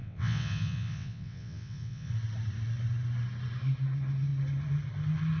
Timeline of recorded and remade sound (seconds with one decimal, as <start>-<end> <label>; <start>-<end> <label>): 0.0-2.1 remade; 2.1-5.4 recorded